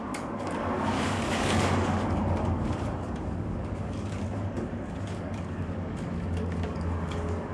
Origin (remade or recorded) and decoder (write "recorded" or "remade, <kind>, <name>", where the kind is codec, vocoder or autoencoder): remade, codec, DAC